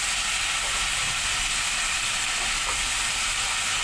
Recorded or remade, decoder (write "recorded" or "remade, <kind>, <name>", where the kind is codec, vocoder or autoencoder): recorded